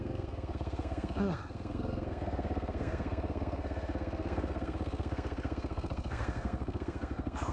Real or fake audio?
fake